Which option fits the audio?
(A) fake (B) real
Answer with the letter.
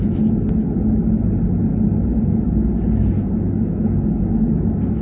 B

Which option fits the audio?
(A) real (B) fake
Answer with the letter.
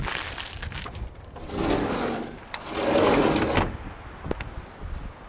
A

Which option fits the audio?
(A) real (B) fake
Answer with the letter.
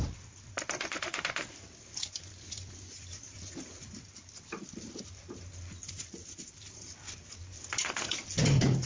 A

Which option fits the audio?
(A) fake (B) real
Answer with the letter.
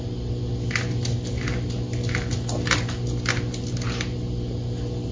B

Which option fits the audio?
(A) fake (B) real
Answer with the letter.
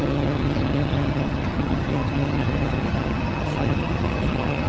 A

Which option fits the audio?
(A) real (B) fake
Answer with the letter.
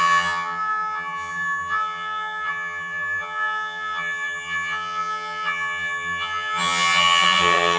B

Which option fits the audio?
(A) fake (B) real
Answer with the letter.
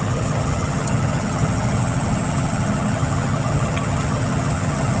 A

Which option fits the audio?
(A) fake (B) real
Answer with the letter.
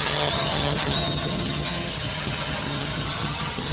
A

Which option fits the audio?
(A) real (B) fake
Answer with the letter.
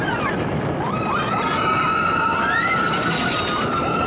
A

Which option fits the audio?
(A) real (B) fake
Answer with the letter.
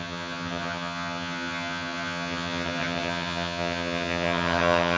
B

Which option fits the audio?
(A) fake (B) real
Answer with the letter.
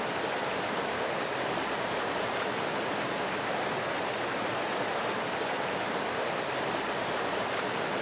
B